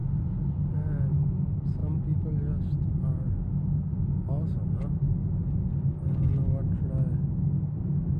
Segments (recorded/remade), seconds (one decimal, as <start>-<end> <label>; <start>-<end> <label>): 0.0-0.7 remade; 0.7-8.2 recorded